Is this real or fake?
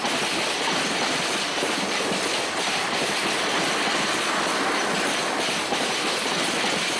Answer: real